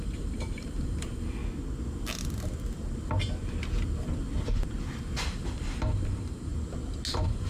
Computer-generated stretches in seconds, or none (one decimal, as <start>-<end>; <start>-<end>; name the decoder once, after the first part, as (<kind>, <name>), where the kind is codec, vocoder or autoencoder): 0.0-1.4 (vocoder, BigVGAN v2); 5.2-6.5; 7.1-7.5